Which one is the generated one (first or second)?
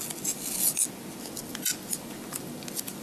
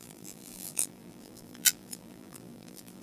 second